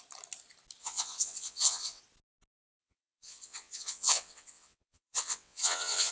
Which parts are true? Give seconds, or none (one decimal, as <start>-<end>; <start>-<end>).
0.0-0.8; 2.0-2.8